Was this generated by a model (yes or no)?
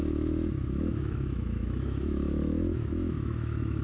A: yes